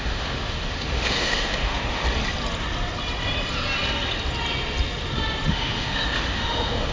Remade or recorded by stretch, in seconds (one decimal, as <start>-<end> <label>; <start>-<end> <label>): 0.0-2.0 remade; 2.0-5.5 recorded; 5.5-6.9 remade